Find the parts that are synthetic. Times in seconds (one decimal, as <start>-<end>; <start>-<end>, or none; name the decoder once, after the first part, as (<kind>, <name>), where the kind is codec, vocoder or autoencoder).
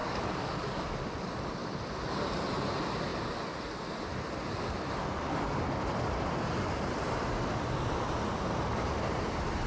0.0-0.8 (codec, DAC)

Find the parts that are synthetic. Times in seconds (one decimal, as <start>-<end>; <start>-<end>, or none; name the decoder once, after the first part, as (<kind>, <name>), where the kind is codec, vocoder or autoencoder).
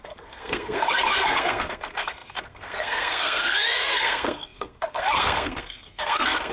0.0-6.5 (codec, SNAC)